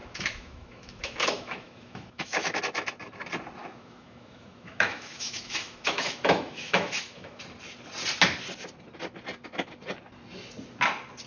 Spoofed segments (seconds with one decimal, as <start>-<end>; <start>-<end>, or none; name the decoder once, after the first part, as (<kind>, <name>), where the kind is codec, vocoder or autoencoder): 0.0-2.6 (autoencoder, DAC-VAE); 3.6-7.4